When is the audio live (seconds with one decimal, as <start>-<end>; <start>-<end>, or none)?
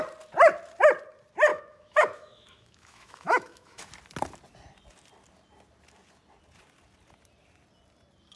0.0-1.5; 3.9-8.4